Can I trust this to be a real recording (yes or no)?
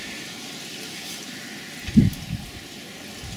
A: yes